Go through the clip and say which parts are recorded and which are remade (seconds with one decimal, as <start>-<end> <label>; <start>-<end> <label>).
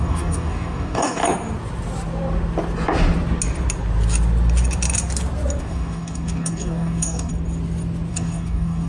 0.0-1.2 remade; 1.2-5.6 recorded; 5.6-7.3 remade; 7.3-8.1 recorded; 8.1-8.9 remade